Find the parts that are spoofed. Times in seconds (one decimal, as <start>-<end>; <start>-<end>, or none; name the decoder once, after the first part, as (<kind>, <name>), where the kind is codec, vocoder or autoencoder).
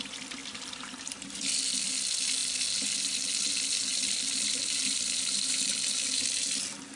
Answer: 0.4-1.4 (vocoder, BigVGAN v2); 3.9-5.7